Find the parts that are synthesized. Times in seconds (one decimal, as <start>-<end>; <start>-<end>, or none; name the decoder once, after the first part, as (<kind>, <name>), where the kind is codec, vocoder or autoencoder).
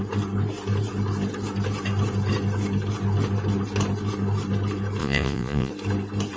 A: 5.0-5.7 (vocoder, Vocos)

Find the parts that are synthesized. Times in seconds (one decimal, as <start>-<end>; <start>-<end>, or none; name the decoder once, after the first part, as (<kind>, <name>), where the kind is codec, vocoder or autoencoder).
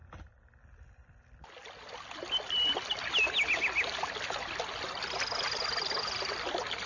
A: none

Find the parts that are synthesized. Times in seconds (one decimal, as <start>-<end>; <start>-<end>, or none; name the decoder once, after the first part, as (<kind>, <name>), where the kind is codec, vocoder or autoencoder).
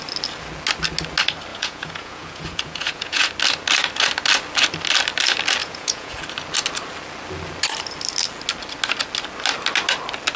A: 1.5-3.3 (vocoder, Vocos); 5.6-6.1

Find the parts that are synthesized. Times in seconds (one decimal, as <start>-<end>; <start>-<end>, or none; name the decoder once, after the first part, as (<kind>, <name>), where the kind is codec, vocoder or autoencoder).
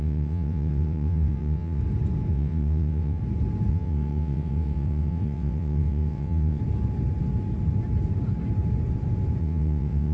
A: 0.0-1.8 (vocoder, WaveNeXt); 2.3-3.2; 3.7-6.6; 9.4-10.1